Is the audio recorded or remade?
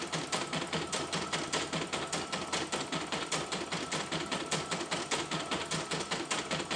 recorded